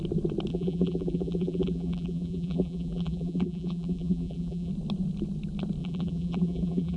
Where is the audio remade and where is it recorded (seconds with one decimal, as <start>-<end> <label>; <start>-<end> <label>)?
0.0-0.5 recorded; 0.5-4.7 remade; 4.7-5.8 recorded; 5.8-7.0 remade